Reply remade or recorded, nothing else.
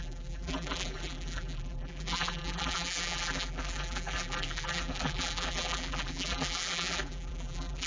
remade